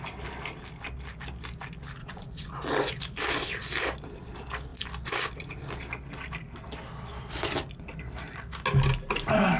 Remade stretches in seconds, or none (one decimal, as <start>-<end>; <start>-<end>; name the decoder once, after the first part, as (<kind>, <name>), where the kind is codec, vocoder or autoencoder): 2.0-2.5 (vocoder, Vocos)